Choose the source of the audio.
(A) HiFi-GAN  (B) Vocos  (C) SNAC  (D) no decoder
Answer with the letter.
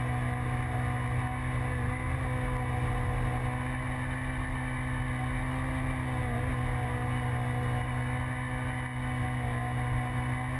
D